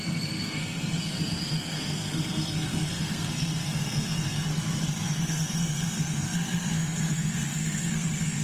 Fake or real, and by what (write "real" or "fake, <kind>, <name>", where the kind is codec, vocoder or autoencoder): fake, codec, SNAC